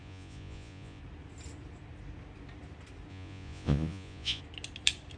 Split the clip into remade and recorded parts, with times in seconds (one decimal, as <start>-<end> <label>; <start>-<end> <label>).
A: 0.0-1.0 remade; 1.0-3.1 recorded; 3.1-4.4 remade; 4.4-5.2 recorded